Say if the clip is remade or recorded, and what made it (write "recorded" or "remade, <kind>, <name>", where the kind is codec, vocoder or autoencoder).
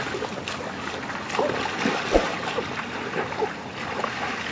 recorded